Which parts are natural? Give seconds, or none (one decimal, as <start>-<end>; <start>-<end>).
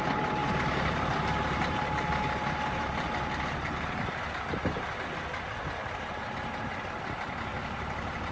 0.0-0.4; 3.8-7.5